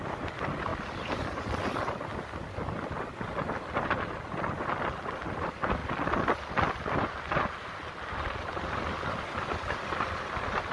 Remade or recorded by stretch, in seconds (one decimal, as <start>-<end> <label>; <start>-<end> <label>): 0.0-10.7 recorded